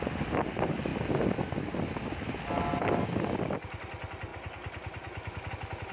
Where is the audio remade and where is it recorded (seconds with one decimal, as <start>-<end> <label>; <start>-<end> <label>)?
0.0-5.9 recorded